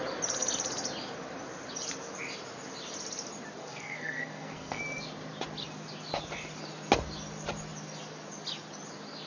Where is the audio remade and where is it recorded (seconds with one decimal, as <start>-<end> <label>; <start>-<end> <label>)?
0.0-3.6 recorded; 3.6-4.8 remade; 4.8-9.3 recorded